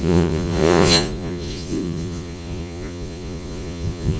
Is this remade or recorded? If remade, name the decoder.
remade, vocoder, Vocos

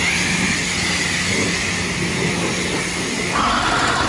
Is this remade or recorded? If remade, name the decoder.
recorded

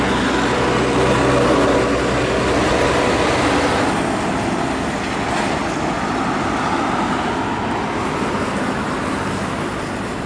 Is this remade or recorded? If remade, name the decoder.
recorded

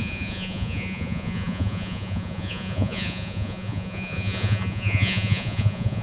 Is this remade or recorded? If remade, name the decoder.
remade, vocoder, Vocos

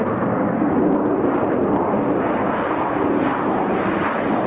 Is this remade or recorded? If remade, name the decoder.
recorded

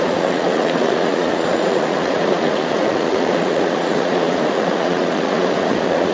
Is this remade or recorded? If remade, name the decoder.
remade, vocoder, Vocos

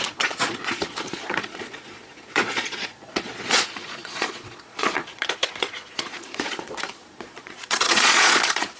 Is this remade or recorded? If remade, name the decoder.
remade, vocoder, Vocos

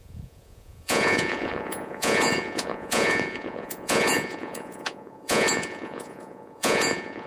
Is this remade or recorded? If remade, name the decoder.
remade, vocoder, Vocos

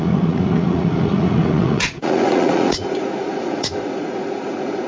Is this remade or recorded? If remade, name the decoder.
remade, vocoder, Vocos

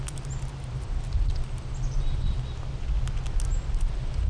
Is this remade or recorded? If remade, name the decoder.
recorded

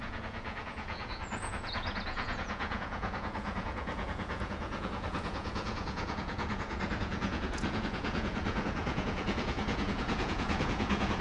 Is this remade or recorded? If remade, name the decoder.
remade, vocoder, Vocos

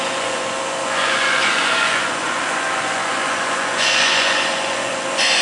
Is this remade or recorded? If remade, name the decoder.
remade, vocoder, Vocos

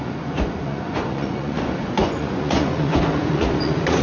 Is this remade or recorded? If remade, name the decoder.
remade, vocoder, Vocos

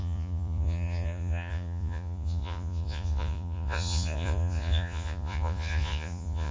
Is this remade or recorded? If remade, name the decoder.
remade, vocoder, Vocos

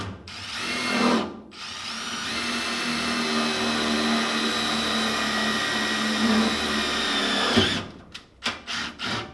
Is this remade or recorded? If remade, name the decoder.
recorded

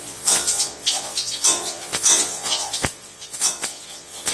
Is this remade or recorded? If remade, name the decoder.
remade, vocoder, Vocos